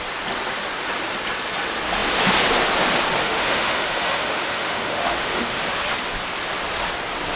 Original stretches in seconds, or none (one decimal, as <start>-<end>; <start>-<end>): 0.0-3.2; 5.6-7.4